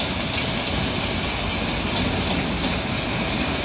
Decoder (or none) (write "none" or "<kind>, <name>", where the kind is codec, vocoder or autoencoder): none